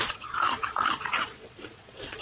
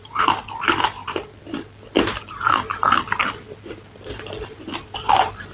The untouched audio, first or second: second